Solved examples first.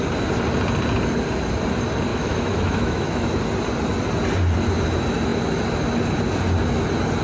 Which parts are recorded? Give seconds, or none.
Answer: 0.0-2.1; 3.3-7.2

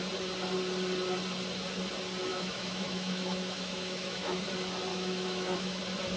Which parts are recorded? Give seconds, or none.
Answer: 0.0-2.3; 4.4-4.9; 5.8-6.2

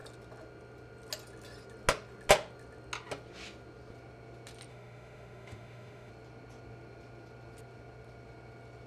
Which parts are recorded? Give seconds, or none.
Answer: 0.0-4.7; 6.1-8.9

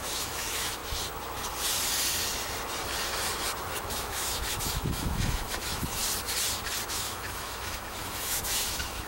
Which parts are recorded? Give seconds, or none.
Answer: 0.8-3.8; 6.0-6.9

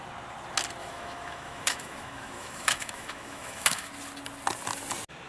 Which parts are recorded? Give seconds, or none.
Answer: 0.0-0.8; 3.9-5.3

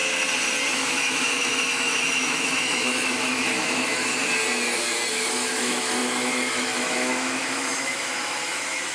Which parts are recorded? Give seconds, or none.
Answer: 0.0-0.7; 4.1-5.1

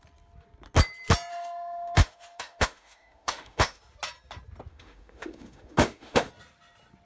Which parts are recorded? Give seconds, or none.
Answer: 0.0-1.3; 3.8-4.7; 6.3-7.0